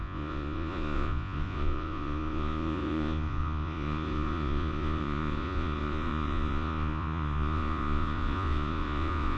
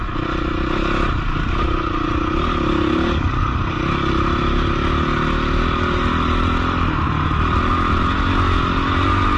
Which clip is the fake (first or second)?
first